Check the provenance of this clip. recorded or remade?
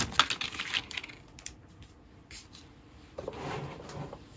recorded